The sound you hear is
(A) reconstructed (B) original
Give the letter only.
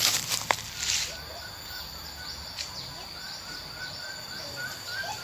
B